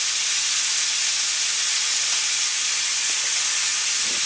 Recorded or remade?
recorded